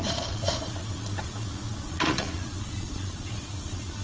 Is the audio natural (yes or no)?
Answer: no